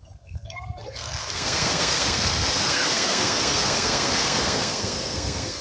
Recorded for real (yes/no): no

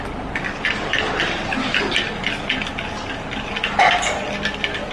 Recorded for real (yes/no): yes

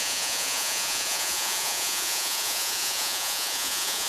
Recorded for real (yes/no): no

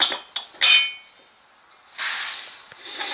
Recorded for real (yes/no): yes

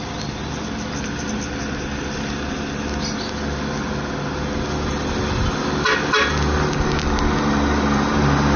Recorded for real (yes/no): yes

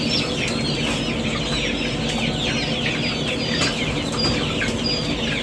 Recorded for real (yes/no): yes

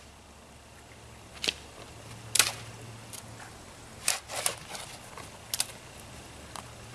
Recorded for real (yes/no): yes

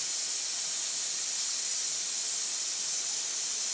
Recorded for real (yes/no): yes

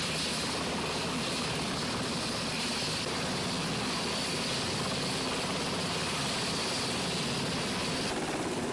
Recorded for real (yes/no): yes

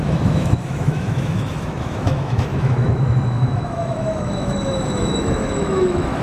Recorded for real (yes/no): no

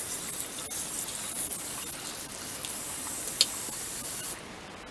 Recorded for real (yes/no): yes